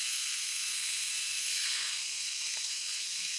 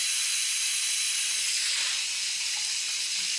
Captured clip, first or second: second